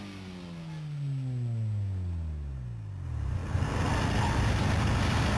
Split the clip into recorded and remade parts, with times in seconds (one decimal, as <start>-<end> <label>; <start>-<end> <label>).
0.0-5.4 recorded